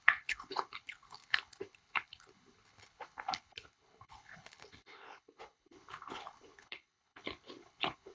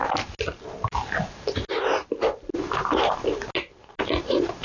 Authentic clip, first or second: second